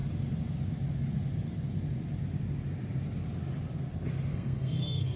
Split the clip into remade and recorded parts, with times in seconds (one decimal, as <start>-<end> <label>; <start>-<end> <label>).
0.0-4.3 recorded; 4.3-5.2 remade